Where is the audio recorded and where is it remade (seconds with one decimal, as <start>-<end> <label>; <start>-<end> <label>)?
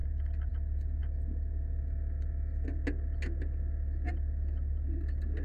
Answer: 0.0-5.4 recorded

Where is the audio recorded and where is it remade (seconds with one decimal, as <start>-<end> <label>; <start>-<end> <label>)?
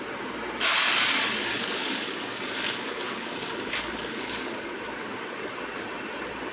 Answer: 0.0-0.8 recorded; 0.8-4.7 remade; 4.7-6.5 recorded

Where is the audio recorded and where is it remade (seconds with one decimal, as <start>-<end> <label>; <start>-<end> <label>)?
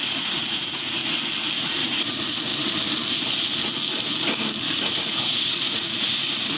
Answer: 0.0-1.0 remade; 1.0-1.6 recorded; 1.6-2.5 remade; 2.5-4.8 recorded; 4.8-6.6 remade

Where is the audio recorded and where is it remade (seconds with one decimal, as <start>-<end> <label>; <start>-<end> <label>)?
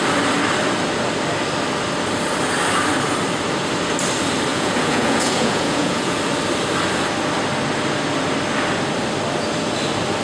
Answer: 0.0-4.5 recorded; 4.5-6.2 remade; 6.2-10.2 recorded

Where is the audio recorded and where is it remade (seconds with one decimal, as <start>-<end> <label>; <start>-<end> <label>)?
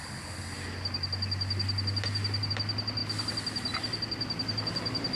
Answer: 0.0-5.2 recorded